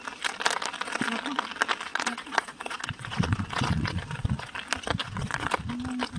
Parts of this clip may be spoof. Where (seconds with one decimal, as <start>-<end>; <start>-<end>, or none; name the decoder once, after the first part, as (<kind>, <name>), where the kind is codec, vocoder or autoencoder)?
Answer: 1.9-4.5 (vocoder, Vocos); 5.0-5.7